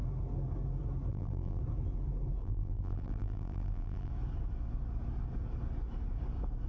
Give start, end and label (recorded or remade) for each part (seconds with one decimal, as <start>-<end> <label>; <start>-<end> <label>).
0.0-1.1 recorded; 1.1-1.6 remade; 1.6-2.4 recorded; 2.4-4.1 remade; 4.1-6.7 recorded